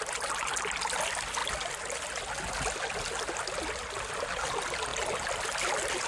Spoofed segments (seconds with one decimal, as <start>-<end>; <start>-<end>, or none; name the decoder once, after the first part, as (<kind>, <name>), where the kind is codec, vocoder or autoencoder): 1.4-2.0 (vocoder, BigVGAN v2)